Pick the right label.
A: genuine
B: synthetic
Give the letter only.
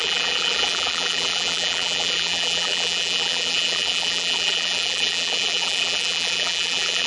B